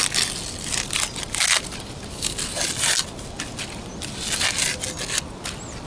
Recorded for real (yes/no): yes